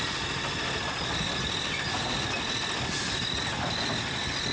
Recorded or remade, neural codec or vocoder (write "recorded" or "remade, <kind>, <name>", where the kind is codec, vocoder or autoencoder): recorded